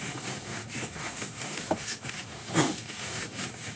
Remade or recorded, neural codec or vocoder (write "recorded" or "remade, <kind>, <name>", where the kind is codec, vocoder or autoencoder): remade, codec, DAC